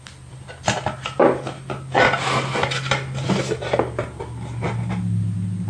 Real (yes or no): yes